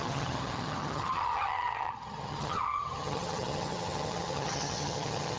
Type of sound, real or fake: fake